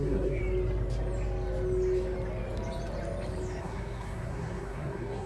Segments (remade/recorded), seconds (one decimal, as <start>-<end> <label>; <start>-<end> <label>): 0.0-0.4 remade; 0.4-3.6 recorded; 3.6-5.3 remade